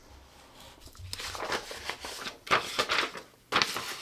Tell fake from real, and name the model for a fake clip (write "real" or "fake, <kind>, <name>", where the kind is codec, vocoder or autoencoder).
real